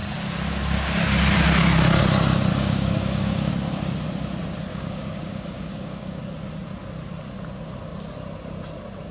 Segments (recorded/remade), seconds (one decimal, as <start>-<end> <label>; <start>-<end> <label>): 0.0-2.5 recorded; 2.5-3.5 remade; 3.5-4.7 recorded; 4.7-6.2 remade; 6.2-9.1 recorded

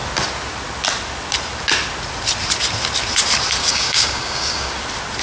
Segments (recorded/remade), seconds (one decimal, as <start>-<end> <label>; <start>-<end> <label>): 0.0-3.6 recorded; 3.6-4.7 remade; 4.7-5.2 recorded

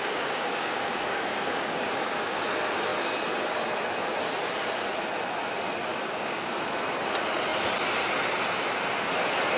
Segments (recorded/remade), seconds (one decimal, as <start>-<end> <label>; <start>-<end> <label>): 0.0-2.4 remade; 2.4-5.9 recorded; 5.9-6.5 remade; 6.5-9.6 recorded

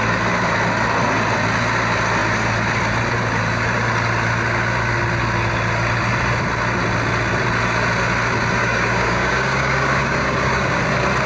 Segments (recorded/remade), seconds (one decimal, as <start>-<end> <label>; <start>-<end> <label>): 0.0-8.6 recorded; 8.6-10.8 remade; 10.8-11.3 recorded

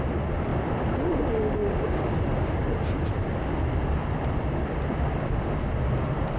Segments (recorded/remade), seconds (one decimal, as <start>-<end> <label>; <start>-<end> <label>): 0.0-6.4 recorded

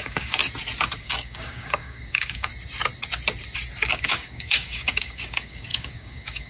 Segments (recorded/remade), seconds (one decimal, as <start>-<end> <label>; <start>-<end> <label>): 0.0-0.4 remade; 0.4-1.0 recorded; 1.0-2.5 remade; 2.5-3.8 recorded; 3.8-6.5 remade

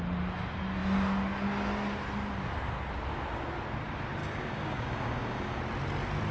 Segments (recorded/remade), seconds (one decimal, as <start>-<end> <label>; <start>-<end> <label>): 0.0-4.2 recorded; 4.2-5.6 remade; 5.6-6.3 recorded